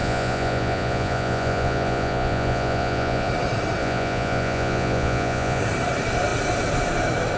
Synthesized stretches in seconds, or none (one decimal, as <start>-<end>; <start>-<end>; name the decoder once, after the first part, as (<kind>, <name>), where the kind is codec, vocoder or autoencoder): 0.0-3.3 (vocoder, Vocos); 3.8-5.6